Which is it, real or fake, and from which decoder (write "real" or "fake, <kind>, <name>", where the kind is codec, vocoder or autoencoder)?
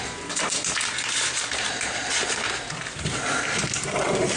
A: fake, vocoder, BigVGAN v2